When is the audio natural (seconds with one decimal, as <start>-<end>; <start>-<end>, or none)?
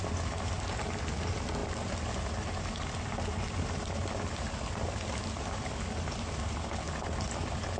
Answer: 0.0-7.8